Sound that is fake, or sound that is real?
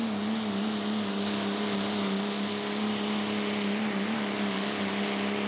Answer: real